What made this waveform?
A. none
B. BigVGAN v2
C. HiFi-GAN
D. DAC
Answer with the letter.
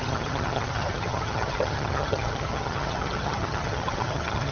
C